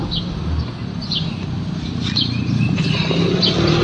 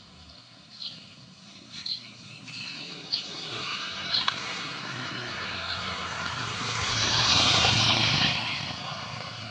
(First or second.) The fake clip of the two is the second